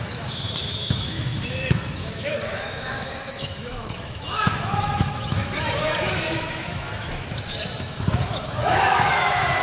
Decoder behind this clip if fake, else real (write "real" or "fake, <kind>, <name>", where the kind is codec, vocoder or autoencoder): fake, autoencoder, DAC-VAE